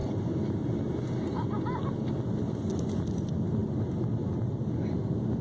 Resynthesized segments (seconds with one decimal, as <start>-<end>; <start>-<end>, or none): none